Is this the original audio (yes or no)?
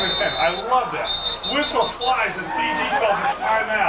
yes